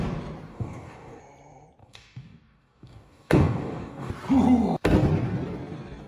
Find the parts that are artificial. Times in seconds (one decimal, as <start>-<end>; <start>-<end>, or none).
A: 0.5-1.2; 1.8-4.1